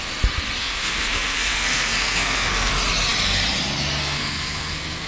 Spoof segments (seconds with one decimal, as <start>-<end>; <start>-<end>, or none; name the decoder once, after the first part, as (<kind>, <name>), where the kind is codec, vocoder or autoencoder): 0.6-2.7 (codec, SNAC); 4.0-5.1